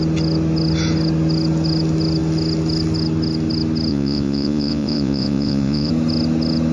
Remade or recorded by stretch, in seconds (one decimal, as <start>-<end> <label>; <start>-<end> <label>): 0.0-3.9 recorded; 3.9-5.9 remade; 5.9-6.7 recorded